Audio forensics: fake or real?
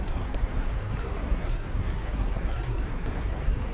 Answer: fake